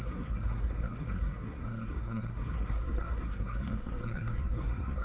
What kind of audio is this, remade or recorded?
remade